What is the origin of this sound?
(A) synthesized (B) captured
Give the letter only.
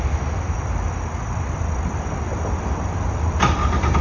A